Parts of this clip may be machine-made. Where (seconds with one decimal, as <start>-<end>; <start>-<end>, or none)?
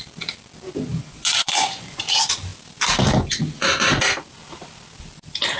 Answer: 0.9-2.0